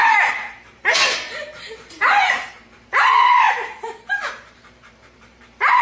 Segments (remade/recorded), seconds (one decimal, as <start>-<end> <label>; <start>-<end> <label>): 0.0-5.8 remade

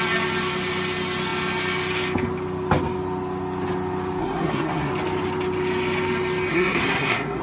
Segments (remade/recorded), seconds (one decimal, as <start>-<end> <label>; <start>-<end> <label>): 0.0-4.2 recorded; 4.2-4.9 remade; 4.9-6.5 recorded; 6.5-7.4 remade

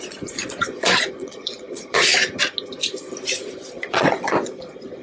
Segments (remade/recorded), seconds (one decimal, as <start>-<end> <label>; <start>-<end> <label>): 0.0-2.1 remade; 2.1-3.7 recorded; 3.7-5.0 remade

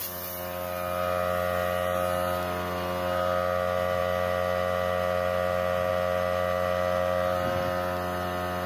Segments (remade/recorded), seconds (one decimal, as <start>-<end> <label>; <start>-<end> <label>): 0.0-8.7 recorded

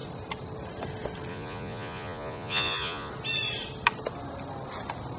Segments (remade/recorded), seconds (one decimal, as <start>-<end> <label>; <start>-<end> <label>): 0.0-1.3 recorded; 1.3-3.1 remade; 3.1-5.2 recorded